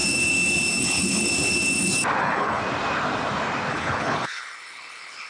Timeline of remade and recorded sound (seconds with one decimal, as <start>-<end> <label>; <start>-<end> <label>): 0.0-0.8 recorded; 0.8-1.3 remade; 1.3-2.2 recorded; 2.2-2.6 remade; 2.6-3.7 recorded; 3.7-5.3 remade